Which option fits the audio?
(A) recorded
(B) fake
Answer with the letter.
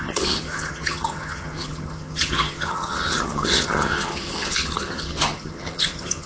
B